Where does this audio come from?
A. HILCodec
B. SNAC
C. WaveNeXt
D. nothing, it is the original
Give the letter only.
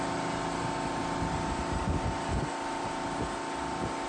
D